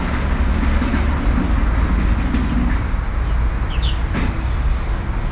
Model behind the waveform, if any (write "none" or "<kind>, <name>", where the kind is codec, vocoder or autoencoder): none